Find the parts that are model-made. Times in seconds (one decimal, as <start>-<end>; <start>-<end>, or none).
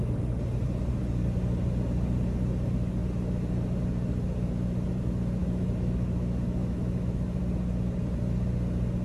5.4-7.4